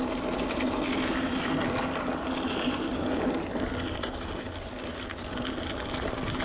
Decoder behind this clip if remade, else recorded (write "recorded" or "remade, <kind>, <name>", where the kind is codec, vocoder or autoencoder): recorded